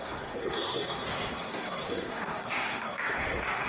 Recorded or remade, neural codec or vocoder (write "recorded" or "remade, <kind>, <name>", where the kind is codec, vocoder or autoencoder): remade, codec, SNAC